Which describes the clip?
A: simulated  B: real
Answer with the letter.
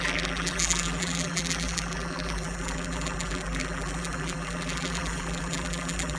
A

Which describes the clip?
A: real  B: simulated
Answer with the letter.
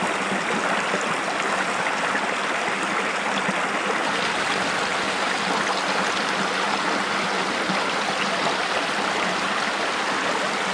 A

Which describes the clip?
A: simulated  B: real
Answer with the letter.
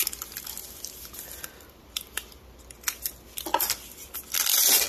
B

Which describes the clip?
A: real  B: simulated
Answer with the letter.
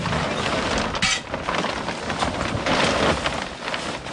A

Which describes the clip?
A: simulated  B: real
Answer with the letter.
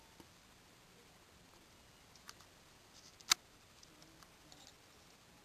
B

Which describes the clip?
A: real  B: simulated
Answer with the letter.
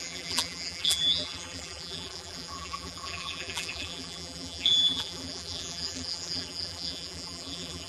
B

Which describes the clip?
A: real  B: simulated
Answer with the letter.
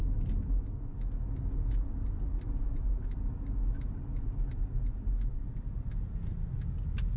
A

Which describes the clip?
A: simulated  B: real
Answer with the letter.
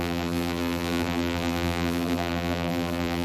A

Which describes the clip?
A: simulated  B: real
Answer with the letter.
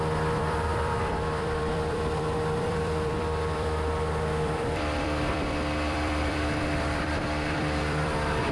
A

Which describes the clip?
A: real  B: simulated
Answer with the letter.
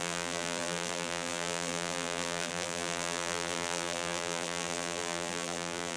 B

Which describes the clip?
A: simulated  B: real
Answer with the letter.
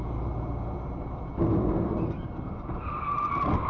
A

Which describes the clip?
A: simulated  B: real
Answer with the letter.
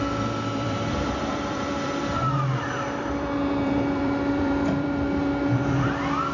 A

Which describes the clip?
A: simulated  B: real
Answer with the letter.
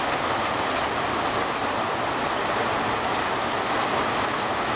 B